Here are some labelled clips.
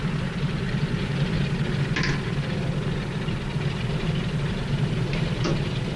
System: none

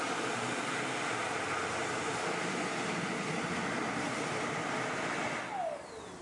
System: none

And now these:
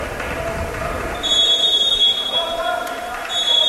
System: none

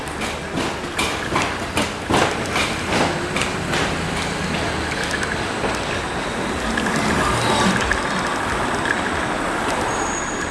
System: none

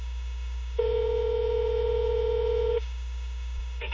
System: autoencoder, DAC-VAE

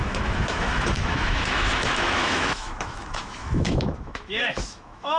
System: autoencoder, DAC-VAE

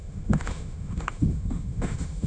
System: autoencoder, DAC-VAE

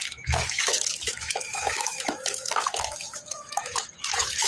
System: autoencoder, DAC-VAE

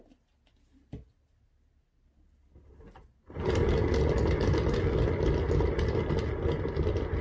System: none